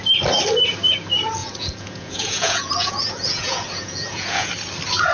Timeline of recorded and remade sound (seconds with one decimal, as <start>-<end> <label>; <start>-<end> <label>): 0.0-1.4 recorded; 1.4-4.5 remade; 4.5-5.1 recorded